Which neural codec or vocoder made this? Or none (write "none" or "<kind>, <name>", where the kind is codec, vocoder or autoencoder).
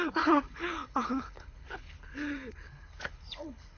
codec, HILCodec